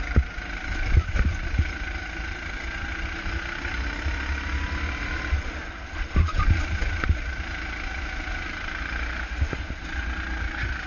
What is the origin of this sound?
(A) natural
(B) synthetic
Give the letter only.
A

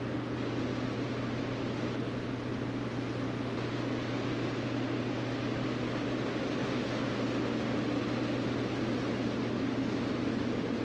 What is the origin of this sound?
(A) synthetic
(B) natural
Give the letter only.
B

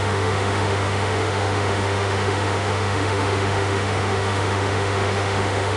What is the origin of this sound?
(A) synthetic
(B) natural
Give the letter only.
A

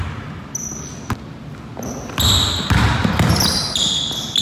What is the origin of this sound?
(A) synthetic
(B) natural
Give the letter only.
B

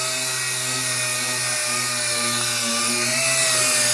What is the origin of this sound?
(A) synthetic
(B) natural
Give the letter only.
B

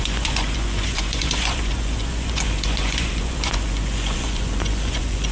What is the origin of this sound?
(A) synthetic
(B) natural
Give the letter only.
A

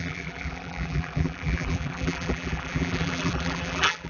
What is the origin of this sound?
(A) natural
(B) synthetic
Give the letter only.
B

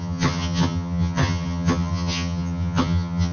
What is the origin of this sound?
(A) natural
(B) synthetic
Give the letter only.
B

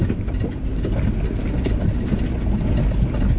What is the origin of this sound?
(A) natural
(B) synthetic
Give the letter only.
A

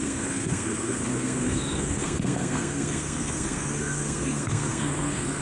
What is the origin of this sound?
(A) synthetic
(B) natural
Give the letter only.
A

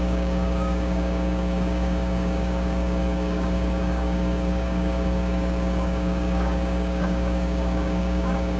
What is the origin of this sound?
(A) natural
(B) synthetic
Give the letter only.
B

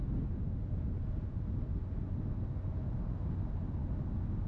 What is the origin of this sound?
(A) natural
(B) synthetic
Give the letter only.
A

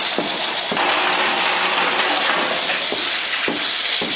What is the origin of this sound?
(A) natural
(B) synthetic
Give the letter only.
A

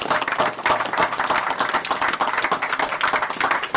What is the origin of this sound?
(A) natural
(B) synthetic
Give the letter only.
A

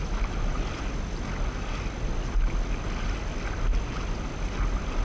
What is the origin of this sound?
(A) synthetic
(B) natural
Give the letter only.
B